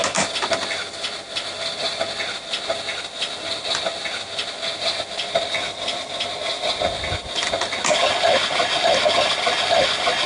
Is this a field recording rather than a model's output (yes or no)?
yes